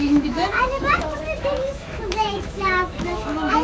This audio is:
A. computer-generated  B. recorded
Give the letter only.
A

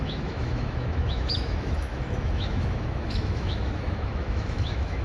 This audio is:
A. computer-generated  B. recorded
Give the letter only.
A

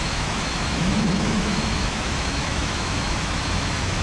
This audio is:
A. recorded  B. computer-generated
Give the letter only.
B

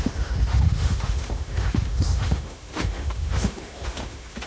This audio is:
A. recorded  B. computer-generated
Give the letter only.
B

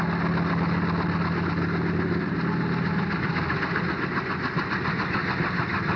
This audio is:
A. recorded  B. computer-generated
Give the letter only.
A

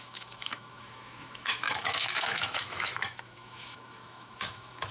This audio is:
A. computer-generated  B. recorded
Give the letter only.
A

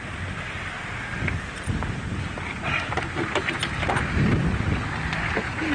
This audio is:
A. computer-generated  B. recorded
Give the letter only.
B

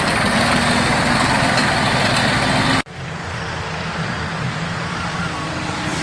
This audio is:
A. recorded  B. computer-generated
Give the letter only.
A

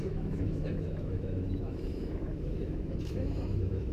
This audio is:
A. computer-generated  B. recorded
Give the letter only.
A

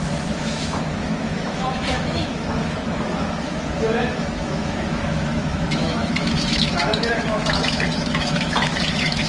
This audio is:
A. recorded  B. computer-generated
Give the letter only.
B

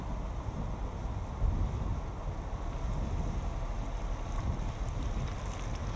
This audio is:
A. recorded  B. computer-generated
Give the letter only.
A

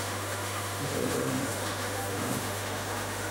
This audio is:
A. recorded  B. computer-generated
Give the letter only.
B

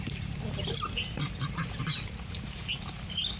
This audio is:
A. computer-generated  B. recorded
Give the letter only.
B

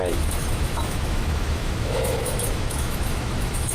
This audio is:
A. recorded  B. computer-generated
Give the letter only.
B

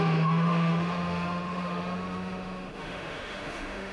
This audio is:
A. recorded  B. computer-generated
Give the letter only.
B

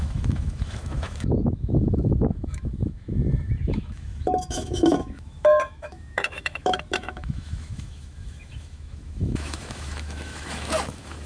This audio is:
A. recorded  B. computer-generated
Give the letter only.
B